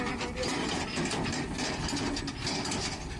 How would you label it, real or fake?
real